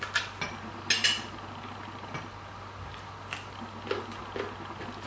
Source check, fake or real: real